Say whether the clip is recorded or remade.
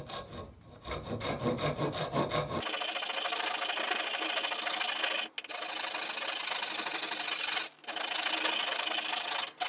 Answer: recorded